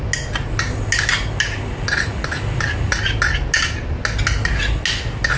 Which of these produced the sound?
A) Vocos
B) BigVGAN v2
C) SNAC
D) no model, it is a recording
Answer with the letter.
D